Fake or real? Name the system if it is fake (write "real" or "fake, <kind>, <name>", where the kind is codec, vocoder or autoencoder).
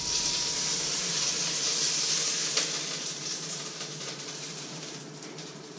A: fake, vocoder, BigVGAN v2